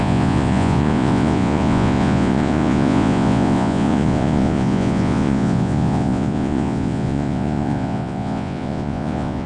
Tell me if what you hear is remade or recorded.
remade